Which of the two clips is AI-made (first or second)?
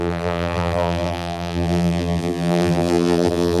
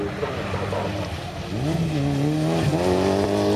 first